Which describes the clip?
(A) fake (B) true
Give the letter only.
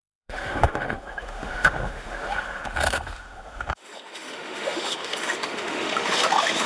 A